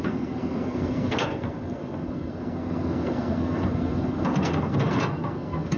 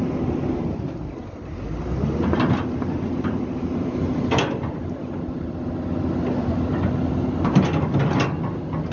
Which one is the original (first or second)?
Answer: second